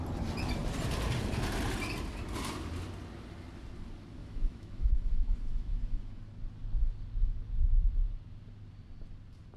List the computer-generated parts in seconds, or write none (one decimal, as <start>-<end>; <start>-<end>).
4.2-6.2